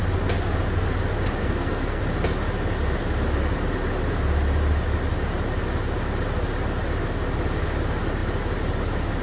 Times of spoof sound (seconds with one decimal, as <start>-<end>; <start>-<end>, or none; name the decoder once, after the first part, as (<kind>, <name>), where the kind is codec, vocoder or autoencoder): 1.4-2.0 (codec, SNAC)

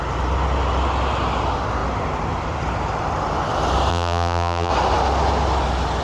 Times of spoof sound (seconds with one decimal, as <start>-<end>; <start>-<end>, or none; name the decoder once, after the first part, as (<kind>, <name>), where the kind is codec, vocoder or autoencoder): 3.9-4.7 (vocoder, BigVGAN v2)

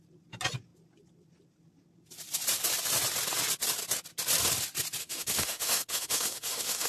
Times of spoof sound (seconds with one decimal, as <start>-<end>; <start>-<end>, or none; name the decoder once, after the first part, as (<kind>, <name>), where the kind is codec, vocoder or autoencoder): 5.0-6.9 (autoencoder, DAC-VAE)

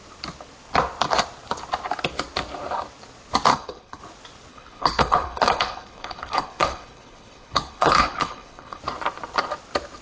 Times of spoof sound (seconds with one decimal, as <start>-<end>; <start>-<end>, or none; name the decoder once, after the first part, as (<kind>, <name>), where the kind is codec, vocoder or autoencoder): 3.5-4.0 (codec, HILCodec); 4.5-8.8

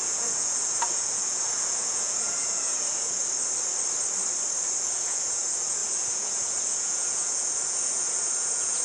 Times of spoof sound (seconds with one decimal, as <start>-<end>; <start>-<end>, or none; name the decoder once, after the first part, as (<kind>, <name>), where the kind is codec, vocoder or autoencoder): 0.0-3.2 (vocoder, Vocos); 4.8-8.8

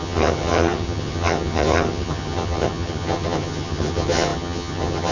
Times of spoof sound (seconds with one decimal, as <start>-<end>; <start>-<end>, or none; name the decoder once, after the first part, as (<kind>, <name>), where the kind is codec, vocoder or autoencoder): 0.0-5.1 (vocoder, HiFi-GAN)

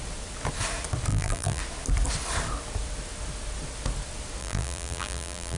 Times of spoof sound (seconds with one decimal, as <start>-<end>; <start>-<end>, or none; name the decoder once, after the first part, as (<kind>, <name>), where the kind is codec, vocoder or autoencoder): 1.1-1.6 (vocoder, BigVGAN v2); 4.4-5.6

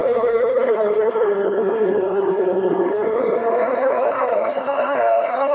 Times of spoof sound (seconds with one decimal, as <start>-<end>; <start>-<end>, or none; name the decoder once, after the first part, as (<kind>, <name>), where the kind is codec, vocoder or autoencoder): 0.0-5.5 (codec, SNAC)